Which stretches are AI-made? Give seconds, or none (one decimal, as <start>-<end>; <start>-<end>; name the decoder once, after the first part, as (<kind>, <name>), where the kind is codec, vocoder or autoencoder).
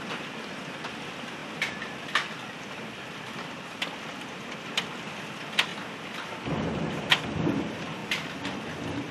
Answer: 0.0-5.7 (vocoder, BigVGAN v2); 7.0-8.0; 8.5-9.1